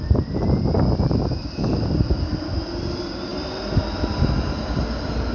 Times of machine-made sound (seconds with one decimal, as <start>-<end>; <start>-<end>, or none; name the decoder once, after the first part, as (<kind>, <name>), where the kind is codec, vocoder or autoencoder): none